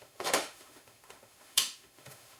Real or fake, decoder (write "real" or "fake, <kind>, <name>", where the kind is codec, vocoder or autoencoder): fake, autoencoder, DAC-VAE